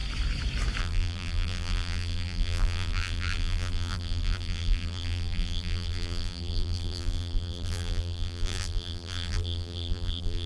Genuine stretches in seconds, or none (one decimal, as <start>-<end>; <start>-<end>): 0.0-0.8